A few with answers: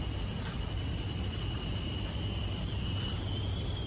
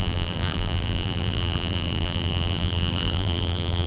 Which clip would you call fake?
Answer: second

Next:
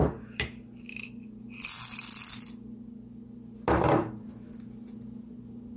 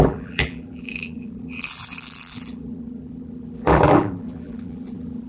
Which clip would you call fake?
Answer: second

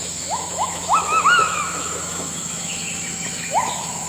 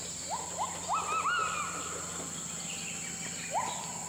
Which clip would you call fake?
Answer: first